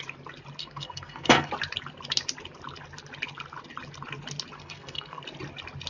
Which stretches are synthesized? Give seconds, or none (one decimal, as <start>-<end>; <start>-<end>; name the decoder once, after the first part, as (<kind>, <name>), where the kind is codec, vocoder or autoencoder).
0.6-1.5 (codec, SNAC); 4.6-5.2